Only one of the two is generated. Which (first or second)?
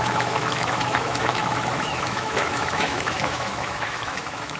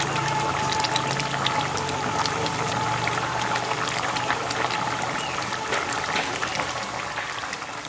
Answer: first